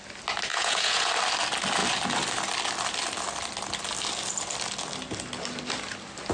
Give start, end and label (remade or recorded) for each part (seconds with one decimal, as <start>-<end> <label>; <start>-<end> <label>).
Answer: 0.0-0.5 recorded; 0.5-1.1 remade; 1.1-6.3 recorded